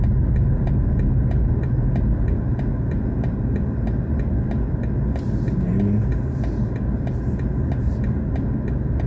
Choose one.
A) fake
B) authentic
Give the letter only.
B